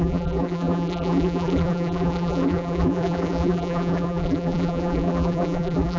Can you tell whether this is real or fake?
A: fake